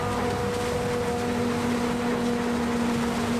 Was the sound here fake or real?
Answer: real